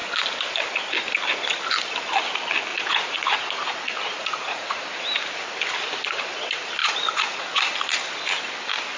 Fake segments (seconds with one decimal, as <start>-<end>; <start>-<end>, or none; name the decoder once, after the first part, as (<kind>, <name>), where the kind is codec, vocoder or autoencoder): 2.7-4.8 (vocoder, Vocos); 6.8-7.7